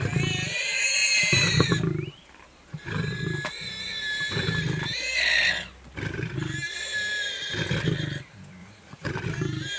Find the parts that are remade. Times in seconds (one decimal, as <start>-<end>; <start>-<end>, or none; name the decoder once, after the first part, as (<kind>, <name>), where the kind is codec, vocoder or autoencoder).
8.6-9.1 (vocoder, Vocos)